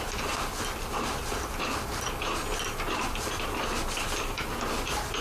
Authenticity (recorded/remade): recorded